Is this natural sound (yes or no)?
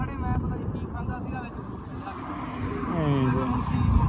yes